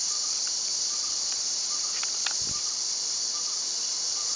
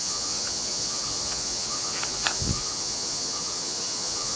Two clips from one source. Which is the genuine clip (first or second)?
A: first